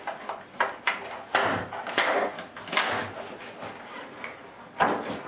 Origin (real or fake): real